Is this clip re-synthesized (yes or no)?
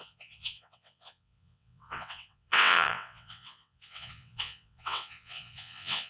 yes